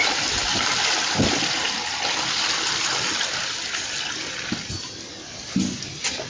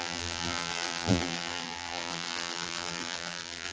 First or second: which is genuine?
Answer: first